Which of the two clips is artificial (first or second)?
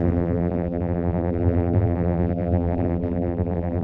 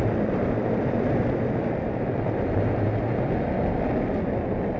first